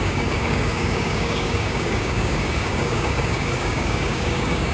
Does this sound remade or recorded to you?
remade